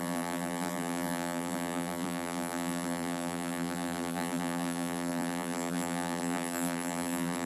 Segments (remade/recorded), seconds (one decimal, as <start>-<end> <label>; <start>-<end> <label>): 0.0-7.5 remade

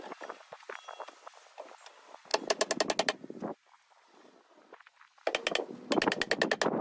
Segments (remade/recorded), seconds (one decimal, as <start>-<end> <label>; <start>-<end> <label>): 0.0-6.8 recorded

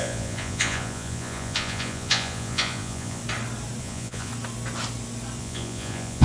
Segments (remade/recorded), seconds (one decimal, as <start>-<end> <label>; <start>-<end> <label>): 0.0-3.2 remade; 3.2-3.8 recorded; 3.8-4.3 remade; 4.3-5.4 recorded; 5.4-6.2 remade

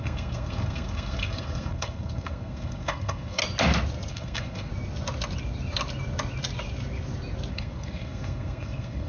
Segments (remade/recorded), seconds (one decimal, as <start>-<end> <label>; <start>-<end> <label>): 0.0-3.4 remade; 3.4-4.1 recorded; 4.1-4.7 remade; 4.7-7.5 recorded; 7.5-9.1 remade